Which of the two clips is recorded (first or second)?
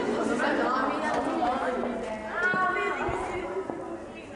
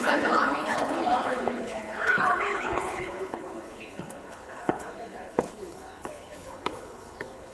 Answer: first